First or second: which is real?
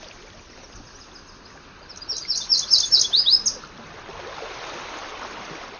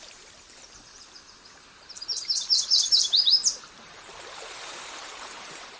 first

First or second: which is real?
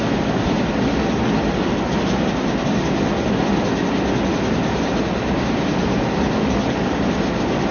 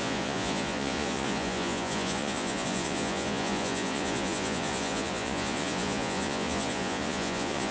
first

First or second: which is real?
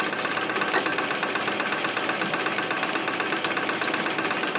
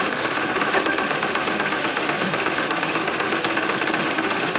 first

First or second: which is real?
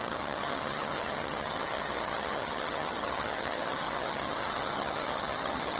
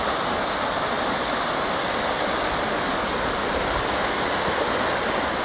second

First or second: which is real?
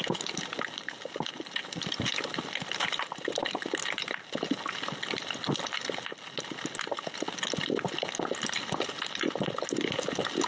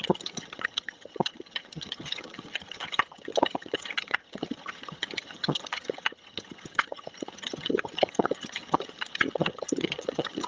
first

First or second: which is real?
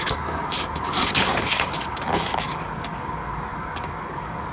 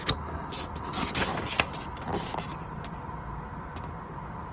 second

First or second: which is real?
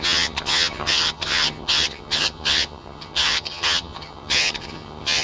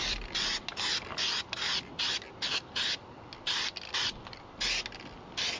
second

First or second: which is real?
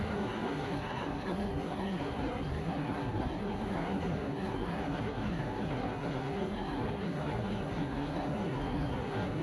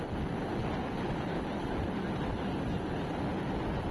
second